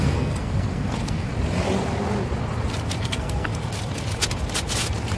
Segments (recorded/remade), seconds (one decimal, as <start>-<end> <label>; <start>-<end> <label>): 0.0-1.3 remade; 1.3-3.0 recorded; 3.0-3.5 remade; 3.5-5.2 recorded